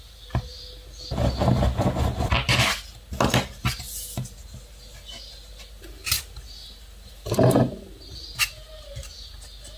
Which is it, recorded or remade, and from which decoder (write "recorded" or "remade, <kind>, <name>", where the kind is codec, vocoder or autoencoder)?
recorded